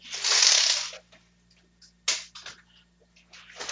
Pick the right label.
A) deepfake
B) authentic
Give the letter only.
B